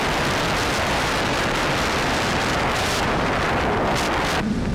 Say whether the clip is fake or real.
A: real